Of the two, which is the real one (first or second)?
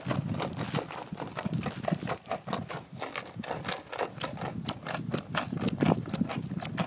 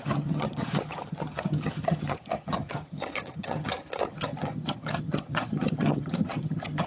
first